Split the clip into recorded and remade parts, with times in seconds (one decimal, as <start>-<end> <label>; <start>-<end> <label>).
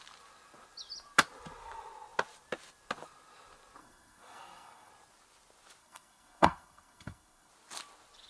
0.0-3.8 recorded; 3.8-4.9 remade; 4.9-5.8 recorded; 5.8-7.5 remade; 7.5-8.3 recorded